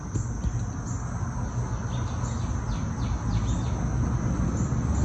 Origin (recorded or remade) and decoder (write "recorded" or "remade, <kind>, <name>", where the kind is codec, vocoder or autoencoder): recorded